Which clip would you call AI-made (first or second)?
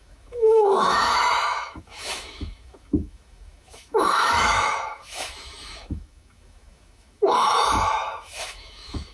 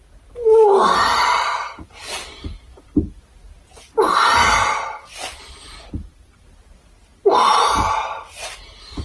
first